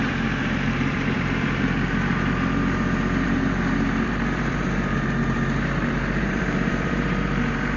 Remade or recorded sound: remade